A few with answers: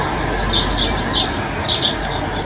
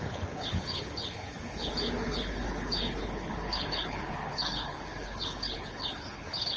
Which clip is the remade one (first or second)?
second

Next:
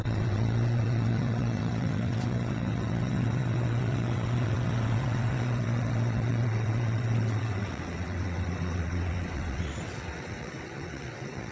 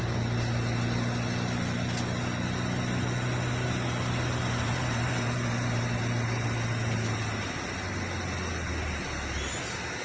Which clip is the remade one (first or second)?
first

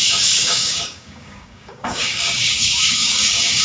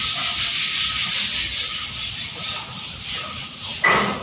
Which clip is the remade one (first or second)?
first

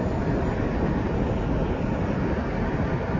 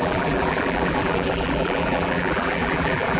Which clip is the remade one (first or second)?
second